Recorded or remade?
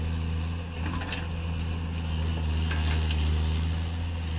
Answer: recorded